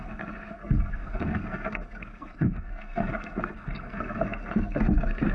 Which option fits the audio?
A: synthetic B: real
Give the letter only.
A